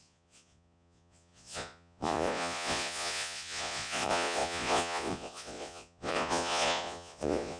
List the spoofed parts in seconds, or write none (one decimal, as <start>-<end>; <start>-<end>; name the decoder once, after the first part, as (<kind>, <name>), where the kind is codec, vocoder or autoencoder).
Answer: 0.0-7.6 (vocoder, Vocos)